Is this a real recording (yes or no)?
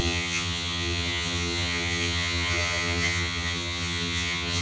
no